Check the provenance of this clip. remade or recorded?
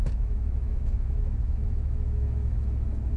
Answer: remade